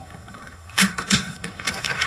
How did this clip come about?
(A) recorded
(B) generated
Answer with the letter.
B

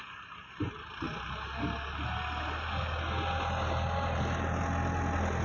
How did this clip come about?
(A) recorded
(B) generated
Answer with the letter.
A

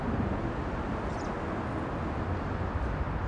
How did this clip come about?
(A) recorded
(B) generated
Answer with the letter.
A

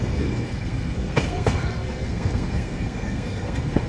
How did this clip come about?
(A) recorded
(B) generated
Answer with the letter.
B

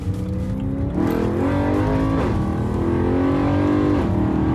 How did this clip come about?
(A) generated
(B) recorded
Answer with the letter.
B